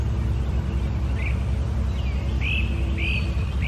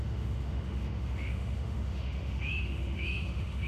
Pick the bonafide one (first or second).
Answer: first